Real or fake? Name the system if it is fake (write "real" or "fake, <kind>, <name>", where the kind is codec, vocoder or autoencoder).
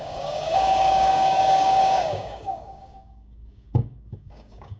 fake, codec, DAC